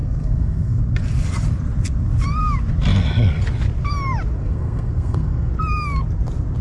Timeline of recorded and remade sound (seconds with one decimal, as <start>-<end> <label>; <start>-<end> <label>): 0.0-0.8 remade; 0.8-4.4 recorded; 4.4-5.5 remade; 5.5-6.6 recorded